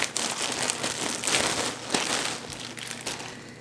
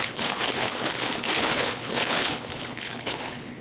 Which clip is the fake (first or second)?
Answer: second